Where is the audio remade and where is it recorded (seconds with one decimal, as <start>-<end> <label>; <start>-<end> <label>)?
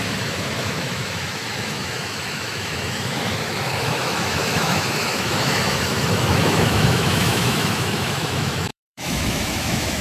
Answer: 0.0-10.0 remade